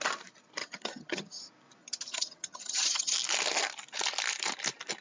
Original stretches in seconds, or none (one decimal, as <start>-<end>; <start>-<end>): 0.0-0.6; 1.4-1.8; 3.1-5.0